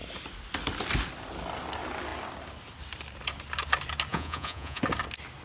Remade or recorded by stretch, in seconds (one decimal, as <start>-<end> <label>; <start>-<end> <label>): 0.0-4.1 recorded; 4.1-4.8 remade; 4.8-5.4 recorded